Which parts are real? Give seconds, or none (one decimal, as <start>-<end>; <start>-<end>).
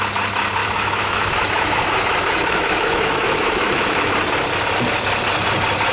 0.0-0.6; 4.1-5.9